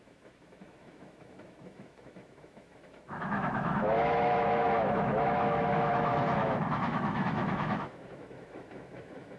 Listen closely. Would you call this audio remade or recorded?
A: remade